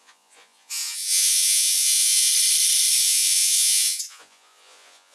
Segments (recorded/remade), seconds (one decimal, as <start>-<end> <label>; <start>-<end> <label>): 0.0-2.3 remade; 2.3-3.0 recorded; 3.0-5.1 remade